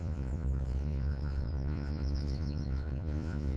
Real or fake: fake